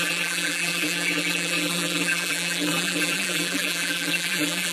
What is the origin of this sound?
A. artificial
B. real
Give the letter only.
A